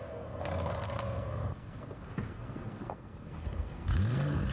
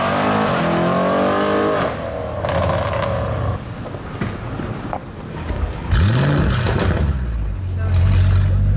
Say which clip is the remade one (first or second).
first